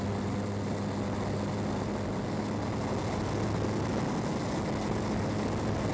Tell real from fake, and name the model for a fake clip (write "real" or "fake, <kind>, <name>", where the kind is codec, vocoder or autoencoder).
real